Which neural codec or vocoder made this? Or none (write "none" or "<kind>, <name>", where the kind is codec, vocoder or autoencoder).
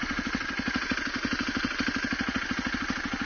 none